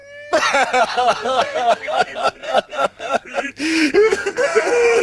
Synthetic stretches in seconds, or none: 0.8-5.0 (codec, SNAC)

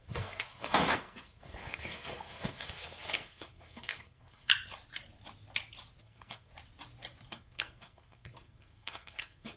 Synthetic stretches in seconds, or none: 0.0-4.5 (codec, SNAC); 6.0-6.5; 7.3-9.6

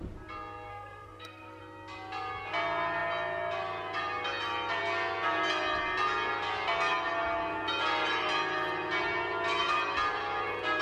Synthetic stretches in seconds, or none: 0.7-1.6 (codec, SNAC)

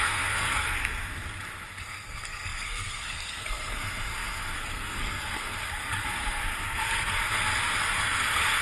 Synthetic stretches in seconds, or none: 0.0-1.1 (codec, SNAC); 1.8-7.2; 7.8-8.6